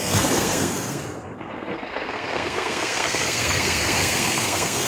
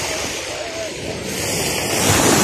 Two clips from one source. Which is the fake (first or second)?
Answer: first